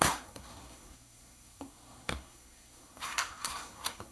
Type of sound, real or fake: fake